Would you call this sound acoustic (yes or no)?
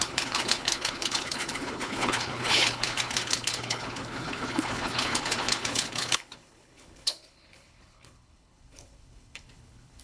no